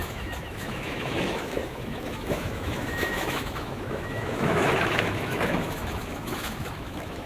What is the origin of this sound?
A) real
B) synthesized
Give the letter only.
B